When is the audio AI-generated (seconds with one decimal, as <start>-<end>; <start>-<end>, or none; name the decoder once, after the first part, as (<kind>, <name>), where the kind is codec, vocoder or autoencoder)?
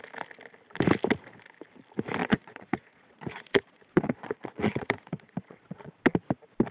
2.2-5.9 (vocoder, Vocos)